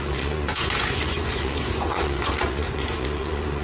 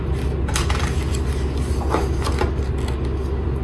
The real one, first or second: second